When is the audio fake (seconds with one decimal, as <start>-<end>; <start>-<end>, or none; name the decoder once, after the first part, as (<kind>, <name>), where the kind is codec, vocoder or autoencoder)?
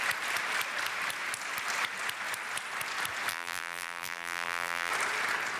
3.3-4.9 (vocoder, BigVGAN v2)